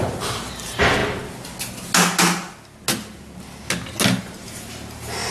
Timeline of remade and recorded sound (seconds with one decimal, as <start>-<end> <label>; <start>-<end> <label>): 0.0-1.0 remade; 1.0-4.2 recorded; 4.2-5.3 remade